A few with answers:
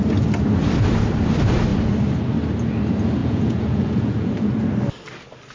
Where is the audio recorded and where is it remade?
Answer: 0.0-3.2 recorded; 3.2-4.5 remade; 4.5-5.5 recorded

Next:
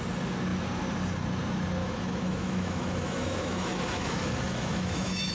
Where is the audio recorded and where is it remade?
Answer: 0.0-1.8 recorded; 1.8-5.3 remade

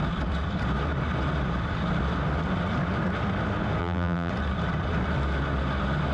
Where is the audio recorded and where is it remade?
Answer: 0.0-3.8 recorded; 3.8-4.3 remade; 4.3-6.1 recorded

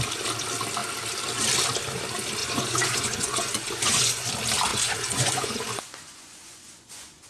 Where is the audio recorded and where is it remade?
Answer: 0.0-2.4 recorded; 2.4-4.3 remade; 4.3-4.7 recorded; 4.7-7.3 remade

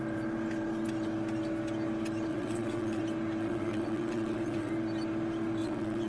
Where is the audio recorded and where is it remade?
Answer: 0.0-2.3 recorded; 2.3-3.0 remade; 3.0-3.4 recorded; 3.4-4.7 remade; 4.7-5.6 recorded; 5.6-6.1 remade